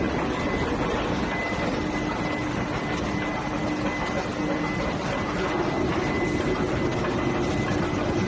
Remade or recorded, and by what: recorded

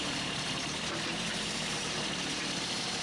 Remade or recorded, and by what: remade, vocoder, BigVGAN v2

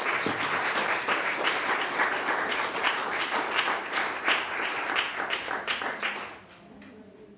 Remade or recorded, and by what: recorded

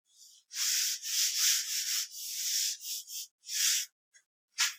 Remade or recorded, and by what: recorded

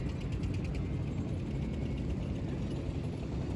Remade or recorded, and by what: recorded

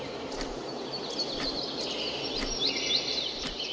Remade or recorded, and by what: recorded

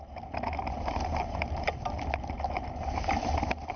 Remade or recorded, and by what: remade, vocoder, BigVGAN v2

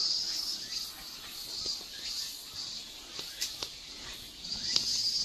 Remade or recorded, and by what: recorded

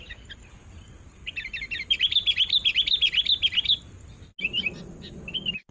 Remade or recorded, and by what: recorded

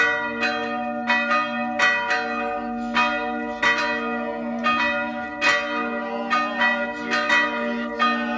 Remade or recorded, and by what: recorded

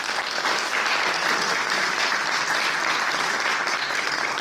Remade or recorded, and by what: recorded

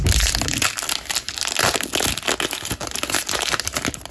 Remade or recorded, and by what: recorded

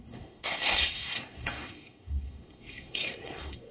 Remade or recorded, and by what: remade, codec, SNAC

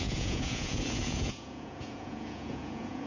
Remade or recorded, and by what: remade, vocoder, Vocos